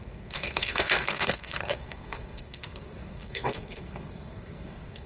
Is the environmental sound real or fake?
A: fake